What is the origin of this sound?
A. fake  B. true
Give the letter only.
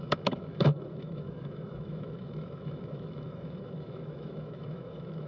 A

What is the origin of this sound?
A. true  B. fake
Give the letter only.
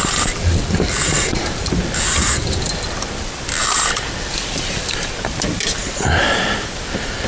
B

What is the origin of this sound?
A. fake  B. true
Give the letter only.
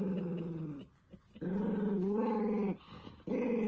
B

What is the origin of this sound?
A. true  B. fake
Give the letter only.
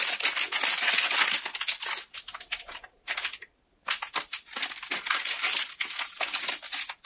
A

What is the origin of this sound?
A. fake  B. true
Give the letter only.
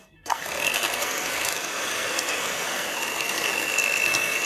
A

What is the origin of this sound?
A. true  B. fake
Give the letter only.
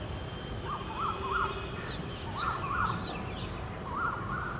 A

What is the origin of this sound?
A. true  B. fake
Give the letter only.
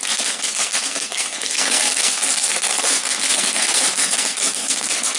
B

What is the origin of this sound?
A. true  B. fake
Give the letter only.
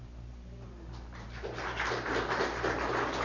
A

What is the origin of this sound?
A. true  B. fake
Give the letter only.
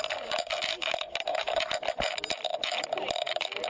A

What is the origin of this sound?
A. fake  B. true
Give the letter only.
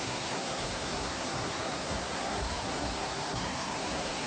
A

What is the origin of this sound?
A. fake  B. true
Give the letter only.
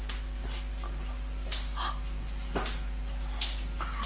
B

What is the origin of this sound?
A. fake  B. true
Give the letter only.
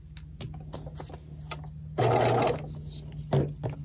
B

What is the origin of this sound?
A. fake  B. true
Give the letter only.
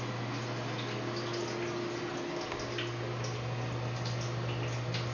B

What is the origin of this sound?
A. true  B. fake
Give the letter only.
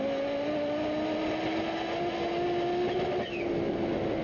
A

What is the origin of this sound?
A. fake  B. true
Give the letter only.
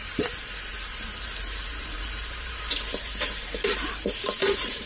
A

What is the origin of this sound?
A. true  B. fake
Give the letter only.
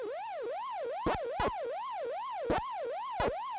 A